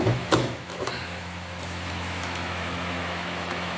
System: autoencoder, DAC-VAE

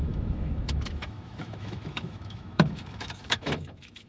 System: autoencoder, DAC-VAE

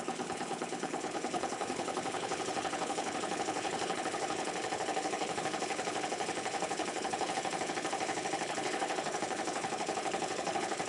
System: codec, HILCodec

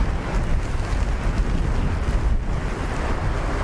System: none